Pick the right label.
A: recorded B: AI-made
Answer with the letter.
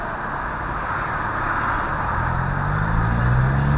A